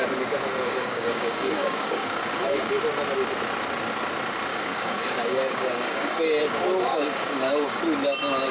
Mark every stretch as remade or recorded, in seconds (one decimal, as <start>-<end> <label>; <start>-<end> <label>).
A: 0.0-0.5 recorded; 0.5-2.8 remade; 2.8-4.5 recorded; 4.5-6.2 remade; 6.2-6.9 recorded; 6.9-7.8 remade; 7.8-8.5 recorded